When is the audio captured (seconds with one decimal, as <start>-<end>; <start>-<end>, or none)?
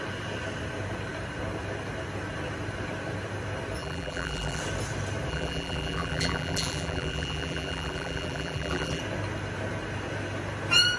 0.0-3.8; 4.6-5.3; 9.0-11.0